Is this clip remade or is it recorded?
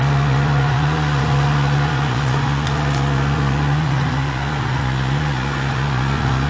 remade